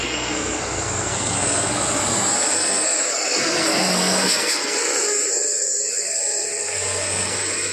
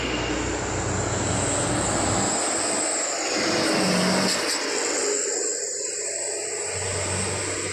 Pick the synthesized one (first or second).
first